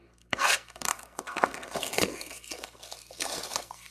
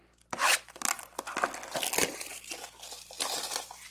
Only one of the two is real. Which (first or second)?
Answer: second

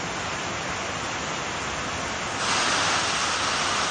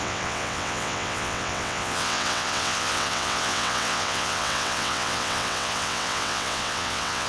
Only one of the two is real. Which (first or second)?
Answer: first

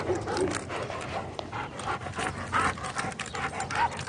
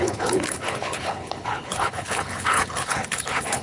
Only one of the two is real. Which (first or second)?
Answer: first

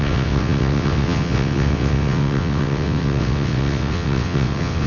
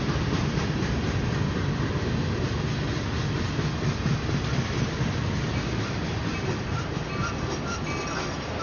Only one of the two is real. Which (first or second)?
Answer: second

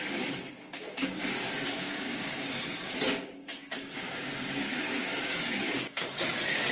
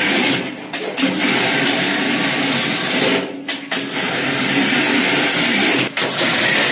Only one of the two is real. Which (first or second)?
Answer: second